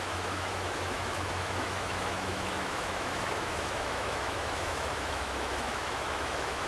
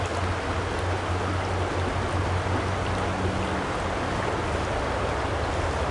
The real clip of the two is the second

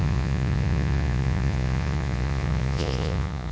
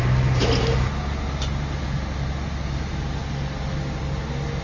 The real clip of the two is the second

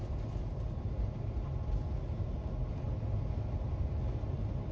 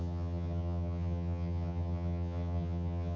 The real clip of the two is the first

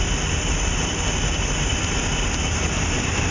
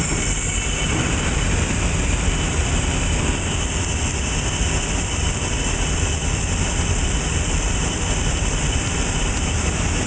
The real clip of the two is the first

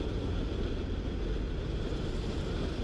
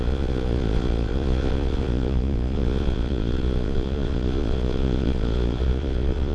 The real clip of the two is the first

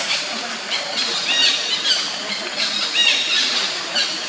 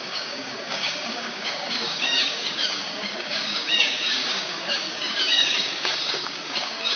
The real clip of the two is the first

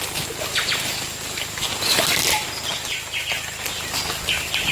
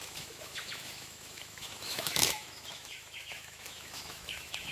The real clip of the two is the first